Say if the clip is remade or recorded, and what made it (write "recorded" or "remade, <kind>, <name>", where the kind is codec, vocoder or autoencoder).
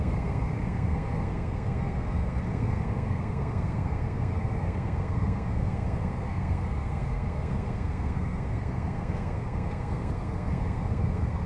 remade, codec, SNAC